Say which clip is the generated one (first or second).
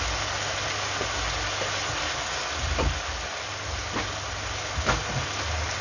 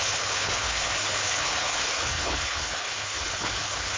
second